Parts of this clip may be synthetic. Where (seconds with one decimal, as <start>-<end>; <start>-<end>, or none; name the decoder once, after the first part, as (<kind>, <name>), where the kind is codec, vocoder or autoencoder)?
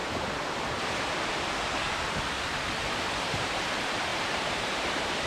3.2-5.3 (vocoder, BigVGAN v2)